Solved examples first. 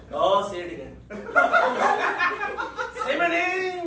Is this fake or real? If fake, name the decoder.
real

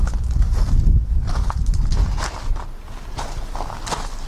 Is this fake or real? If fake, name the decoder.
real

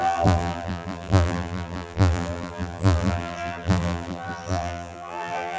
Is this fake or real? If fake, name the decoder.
fake, vocoder, BigVGAN v2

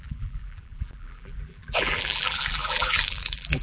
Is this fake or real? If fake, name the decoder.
fake, vocoder, BigVGAN v2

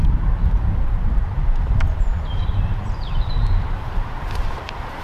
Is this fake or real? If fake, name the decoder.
fake, vocoder, BigVGAN v2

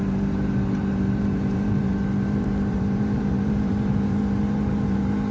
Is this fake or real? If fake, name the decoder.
fake, vocoder, BigVGAN v2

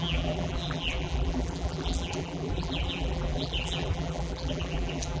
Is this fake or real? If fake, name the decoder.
fake, vocoder, BigVGAN v2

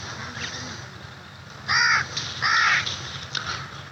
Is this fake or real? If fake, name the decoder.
real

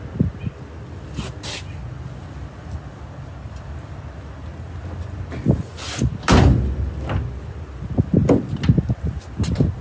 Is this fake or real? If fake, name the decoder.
real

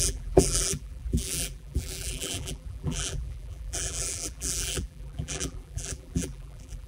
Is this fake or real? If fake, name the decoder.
fake, vocoder, BigVGAN v2